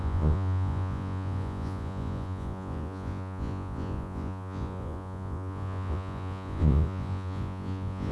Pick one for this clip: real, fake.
fake